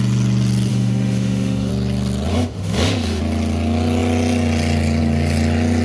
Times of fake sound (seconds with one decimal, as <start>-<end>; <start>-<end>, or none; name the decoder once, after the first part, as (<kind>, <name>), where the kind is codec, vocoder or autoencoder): 0.7-1.7 (autoencoder, DAC-VAE); 2.3-3.2